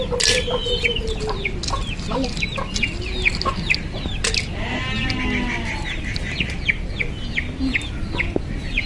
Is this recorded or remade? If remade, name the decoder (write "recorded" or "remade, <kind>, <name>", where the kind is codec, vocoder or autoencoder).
recorded